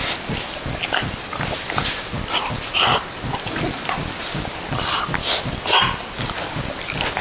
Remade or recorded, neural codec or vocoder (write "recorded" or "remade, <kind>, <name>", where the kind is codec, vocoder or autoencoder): recorded